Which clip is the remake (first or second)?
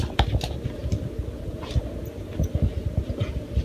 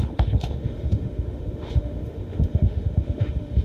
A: second